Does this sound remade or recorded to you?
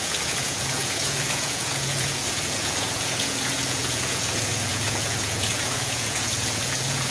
remade